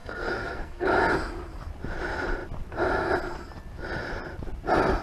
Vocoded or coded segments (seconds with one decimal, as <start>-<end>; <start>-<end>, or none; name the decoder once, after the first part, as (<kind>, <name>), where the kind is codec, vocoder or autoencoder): 0.0-0.9 (codec, SNAC)